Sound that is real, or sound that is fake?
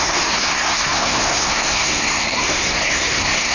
fake